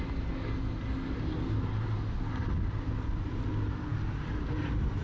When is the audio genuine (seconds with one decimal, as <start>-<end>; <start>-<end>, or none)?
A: 0.0-5.0